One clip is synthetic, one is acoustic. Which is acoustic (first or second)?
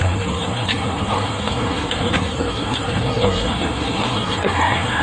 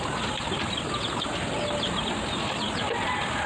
second